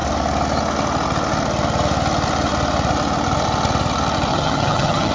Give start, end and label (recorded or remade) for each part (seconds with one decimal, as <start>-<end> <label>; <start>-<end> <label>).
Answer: 0.0-4.3 recorded; 4.3-5.1 remade